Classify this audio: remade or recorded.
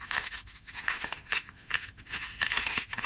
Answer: remade